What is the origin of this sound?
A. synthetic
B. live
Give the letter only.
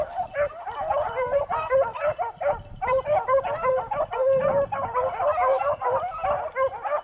B